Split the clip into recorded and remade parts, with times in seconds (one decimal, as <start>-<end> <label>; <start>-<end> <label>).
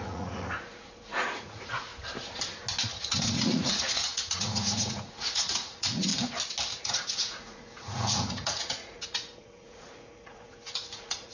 0.0-1.9 remade; 1.9-3.0 recorded; 3.0-6.1 remade; 6.1-6.8 recorded; 6.8-11.3 remade